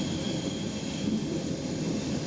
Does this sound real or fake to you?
real